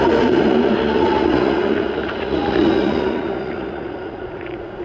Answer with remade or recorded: remade